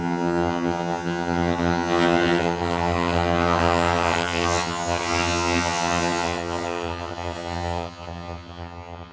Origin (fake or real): fake